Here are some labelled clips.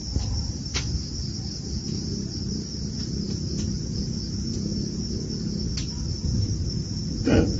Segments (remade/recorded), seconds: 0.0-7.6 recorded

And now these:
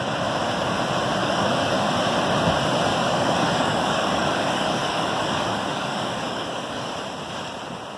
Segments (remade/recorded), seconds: 0.0-1.2 recorded; 1.2-1.7 remade; 1.7-2.9 recorded; 2.9-6.9 remade; 6.9-8.0 recorded

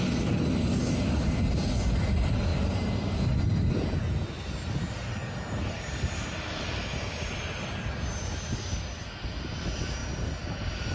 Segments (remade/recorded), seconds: 0.0-10.9 recorded

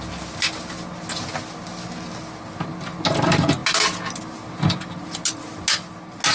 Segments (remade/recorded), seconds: 0.0-6.3 recorded

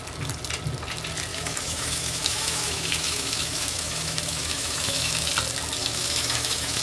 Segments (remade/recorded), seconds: 0.0-1.3 recorded; 1.3-5.3 remade; 5.3-5.8 recorded; 5.8-6.8 remade

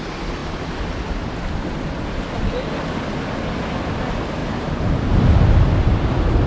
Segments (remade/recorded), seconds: 0.0-6.5 recorded

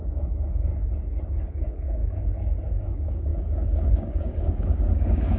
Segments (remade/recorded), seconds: 0.0-0.7 remade; 0.7-1.3 recorded; 1.3-2.0 remade; 2.0-2.8 recorded; 2.8-5.4 remade

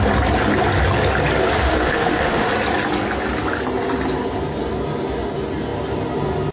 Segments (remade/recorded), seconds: 0.0-1.6 recorded; 1.6-2.5 remade; 2.5-6.5 recorded